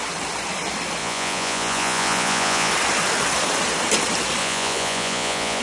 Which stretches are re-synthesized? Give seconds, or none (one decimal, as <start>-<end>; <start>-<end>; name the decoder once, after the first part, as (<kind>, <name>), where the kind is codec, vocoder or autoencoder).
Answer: 1.0-2.7 (vocoder, Vocos); 4.4-5.6